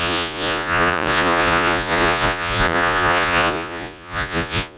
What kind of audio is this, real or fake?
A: fake